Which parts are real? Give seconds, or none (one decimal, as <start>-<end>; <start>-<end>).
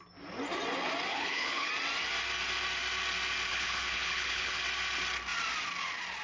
0.0-1.1; 1.7-3.5; 4.6-6.2